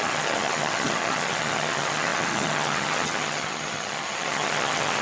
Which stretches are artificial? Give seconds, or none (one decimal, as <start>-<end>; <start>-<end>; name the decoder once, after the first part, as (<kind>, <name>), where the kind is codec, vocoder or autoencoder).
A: 0.0-5.0 (vocoder, HiFi-GAN)

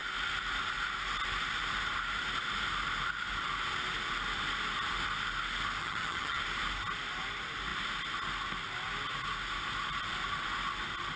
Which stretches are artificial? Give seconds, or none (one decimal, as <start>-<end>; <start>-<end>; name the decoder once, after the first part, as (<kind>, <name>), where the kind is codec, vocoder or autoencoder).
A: 5.8-6.4 (vocoder, HiFi-GAN)

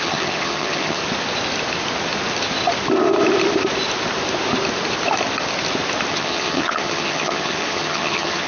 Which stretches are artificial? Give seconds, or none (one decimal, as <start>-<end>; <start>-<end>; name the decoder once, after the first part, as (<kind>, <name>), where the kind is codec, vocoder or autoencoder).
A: 0.0-1.0 (vocoder, HiFi-GAN); 6.1-8.5

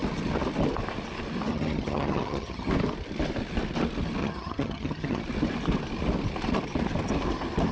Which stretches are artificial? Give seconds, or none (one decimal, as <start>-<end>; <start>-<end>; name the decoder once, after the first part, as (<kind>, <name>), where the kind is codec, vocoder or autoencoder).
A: 1.5-2.7 (vocoder, HiFi-GAN); 4.2-5.2

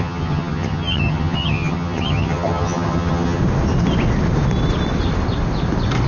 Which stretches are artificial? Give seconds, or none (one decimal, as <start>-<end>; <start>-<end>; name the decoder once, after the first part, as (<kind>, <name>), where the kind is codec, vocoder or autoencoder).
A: 0.0-3.4 (vocoder, HiFi-GAN)

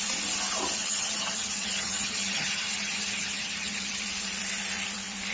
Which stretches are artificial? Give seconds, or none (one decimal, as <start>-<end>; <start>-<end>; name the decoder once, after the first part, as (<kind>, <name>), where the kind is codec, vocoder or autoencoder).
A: 0.8-4.0 (vocoder, HiFi-GAN)

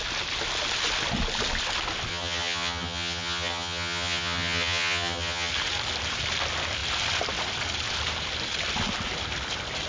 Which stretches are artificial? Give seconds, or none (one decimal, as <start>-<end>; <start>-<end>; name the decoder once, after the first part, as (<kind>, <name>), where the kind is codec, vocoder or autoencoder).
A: 2.1-5.5 (vocoder, HiFi-GAN)

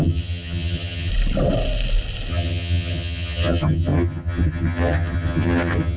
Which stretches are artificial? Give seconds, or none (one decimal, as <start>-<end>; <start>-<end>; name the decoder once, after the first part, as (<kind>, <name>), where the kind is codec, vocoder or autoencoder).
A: 0.0-1.1 (vocoder, HiFi-GAN); 2.3-6.0